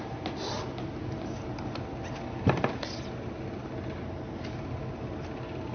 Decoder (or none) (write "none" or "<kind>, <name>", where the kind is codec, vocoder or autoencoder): none